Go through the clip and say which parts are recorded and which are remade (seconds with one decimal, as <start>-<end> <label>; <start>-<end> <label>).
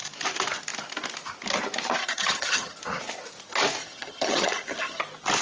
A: 0.0-2.0 recorded; 2.0-2.8 remade; 2.8-3.8 recorded; 3.8-5.0 remade; 5.0-5.4 recorded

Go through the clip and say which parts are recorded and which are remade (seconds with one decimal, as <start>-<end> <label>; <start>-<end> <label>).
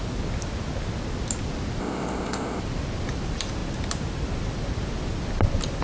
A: 0.0-1.8 recorded; 1.8-2.6 remade; 2.6-5.8 recorded